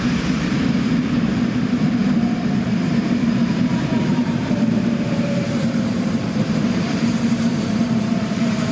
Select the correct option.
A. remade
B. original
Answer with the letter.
A